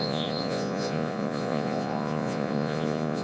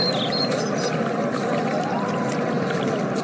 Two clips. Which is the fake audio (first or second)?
first